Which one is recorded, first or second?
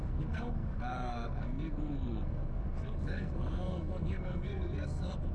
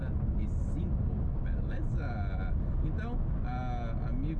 second